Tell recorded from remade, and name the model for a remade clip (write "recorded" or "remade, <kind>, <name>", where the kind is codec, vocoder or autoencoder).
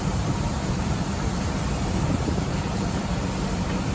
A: remade, vocoder, BigVGAN v2